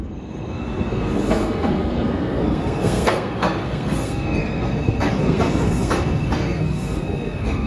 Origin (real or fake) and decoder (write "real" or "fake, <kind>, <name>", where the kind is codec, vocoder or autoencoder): fake, codec, SNAC